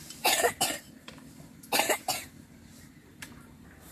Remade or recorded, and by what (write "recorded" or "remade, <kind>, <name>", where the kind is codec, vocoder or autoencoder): remade, vocoder, BigVGAN v2